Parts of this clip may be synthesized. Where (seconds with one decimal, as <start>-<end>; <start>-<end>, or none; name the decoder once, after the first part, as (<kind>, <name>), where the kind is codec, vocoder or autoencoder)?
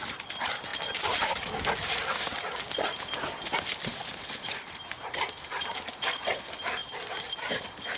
4.0-6.0 (vocoder, BigVGAN v2); 6.8-7.5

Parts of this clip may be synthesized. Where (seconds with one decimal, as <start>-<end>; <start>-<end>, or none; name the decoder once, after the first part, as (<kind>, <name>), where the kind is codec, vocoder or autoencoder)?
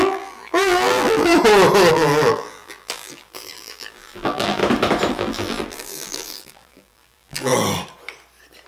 0.0-1.3 (vocoder, BigVGAN v2); 1.9-4.6; 5.1-7.5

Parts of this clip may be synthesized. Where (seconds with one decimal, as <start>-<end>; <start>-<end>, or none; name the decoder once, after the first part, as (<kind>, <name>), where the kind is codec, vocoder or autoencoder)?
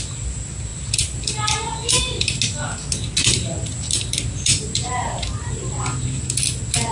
0.7-2.2 (vocoder, BigVGAN v2); 3.2-6.2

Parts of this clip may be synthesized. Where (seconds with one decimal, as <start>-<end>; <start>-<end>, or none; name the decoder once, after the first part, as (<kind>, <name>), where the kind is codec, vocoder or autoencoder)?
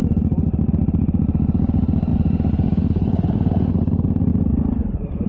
2.1-3.7 (vocoder, BigVGAN v2); 4.3-5.3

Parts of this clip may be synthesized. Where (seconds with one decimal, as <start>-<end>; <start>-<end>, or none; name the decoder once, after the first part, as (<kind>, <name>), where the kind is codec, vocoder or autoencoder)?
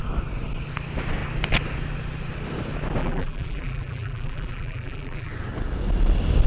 3.0-5.3 (vocoder, BigVGAN v2)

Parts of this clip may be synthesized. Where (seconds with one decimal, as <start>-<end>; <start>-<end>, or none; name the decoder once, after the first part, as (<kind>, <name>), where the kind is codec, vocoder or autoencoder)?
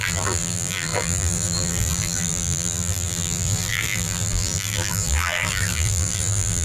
0.0-6.6 (vocoder, BigVGAN v2)